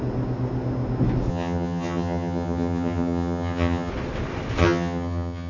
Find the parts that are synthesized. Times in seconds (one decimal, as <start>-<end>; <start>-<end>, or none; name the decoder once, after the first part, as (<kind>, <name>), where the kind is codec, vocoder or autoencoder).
1.3-3.9 (vocoder, HiFi-GAN); 4.6-5.5